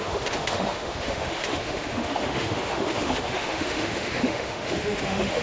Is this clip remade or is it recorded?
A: remade